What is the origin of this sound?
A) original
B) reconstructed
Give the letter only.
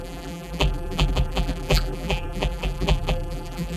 B